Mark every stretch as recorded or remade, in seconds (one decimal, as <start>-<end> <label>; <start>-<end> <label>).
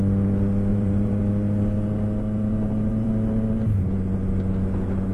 0.0-0.7 recorded; 0.7-1.2 remade; 1.2-2.5 recorded; 2.5-3.1 remade; 3.1-5.1 recorded